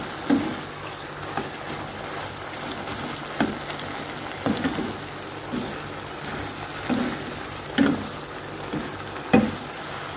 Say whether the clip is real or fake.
real